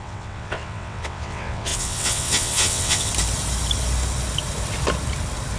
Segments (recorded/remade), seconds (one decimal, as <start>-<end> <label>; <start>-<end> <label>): 0.0-3.1 remade; 3.1-5.6 recorded